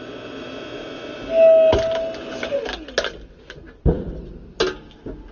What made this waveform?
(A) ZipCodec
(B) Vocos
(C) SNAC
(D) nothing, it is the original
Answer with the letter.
D